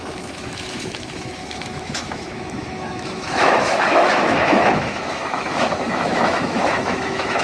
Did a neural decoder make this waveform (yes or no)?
yes